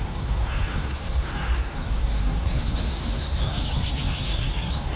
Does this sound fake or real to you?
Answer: fake